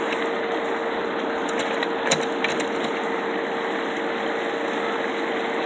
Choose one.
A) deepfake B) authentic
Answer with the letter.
B